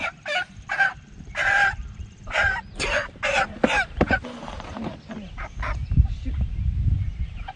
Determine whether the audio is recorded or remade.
remade